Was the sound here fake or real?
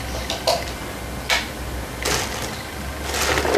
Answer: real